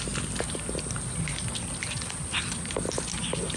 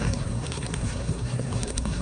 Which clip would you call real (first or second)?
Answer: first